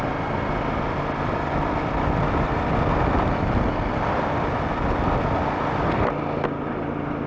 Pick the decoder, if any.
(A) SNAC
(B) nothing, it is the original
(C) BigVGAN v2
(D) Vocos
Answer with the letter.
B